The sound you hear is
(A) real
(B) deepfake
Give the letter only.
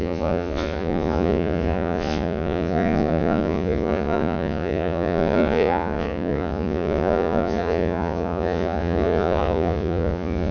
B